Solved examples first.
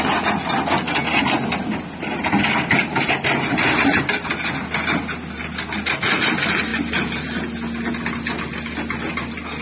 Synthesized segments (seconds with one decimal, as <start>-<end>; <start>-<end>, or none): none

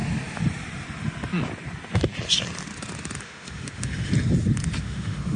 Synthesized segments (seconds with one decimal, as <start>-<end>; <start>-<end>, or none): 3.2-4.1; 4.8-5.4

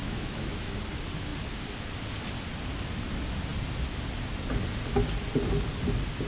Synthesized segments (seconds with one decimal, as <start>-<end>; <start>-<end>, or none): 0.0-0.8

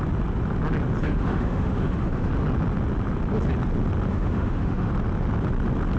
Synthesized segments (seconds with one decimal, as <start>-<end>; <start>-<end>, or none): 1.0-2.3; 4.1-4.9

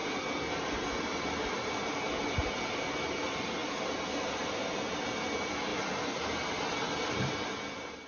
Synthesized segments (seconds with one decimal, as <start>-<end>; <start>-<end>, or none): none